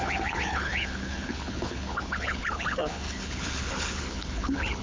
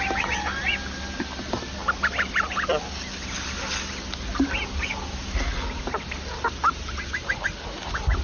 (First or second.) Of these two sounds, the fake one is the first